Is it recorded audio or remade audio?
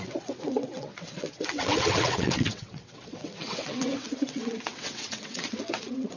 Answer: remade